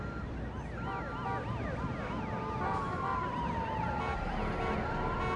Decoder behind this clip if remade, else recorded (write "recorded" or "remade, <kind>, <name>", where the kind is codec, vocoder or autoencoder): recorded